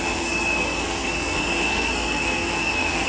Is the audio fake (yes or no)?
yes